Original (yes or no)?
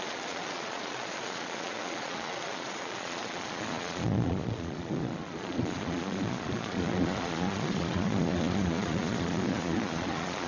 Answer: no